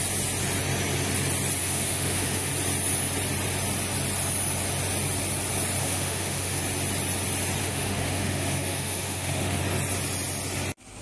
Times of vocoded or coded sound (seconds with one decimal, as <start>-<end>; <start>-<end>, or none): 1.6-2.5; 5.8-6.6; 7.6-9.6